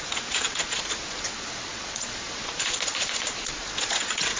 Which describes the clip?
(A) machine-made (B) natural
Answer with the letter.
A